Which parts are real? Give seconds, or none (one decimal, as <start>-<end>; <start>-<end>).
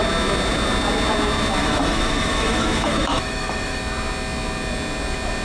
0.0-1.6; 3.8-5.4